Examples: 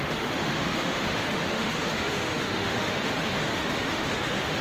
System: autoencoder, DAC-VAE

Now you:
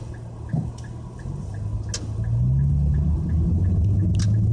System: none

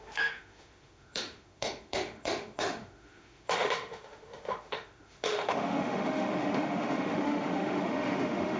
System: autoencoder, DAC-VAE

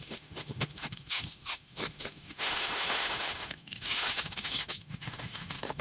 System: autoencoder, DAC-VAE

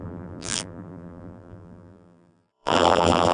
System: vocoder, BigVGAN v2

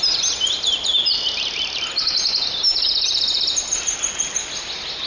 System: none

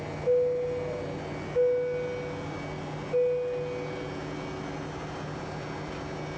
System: none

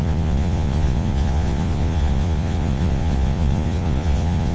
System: vocoder, Vocos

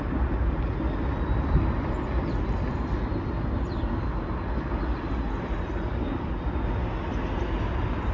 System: none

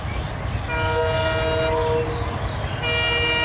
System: none